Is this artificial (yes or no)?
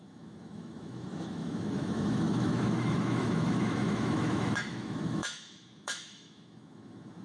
yes